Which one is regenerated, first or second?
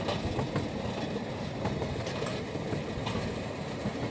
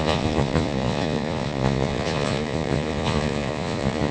second